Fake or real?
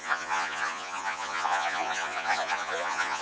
fake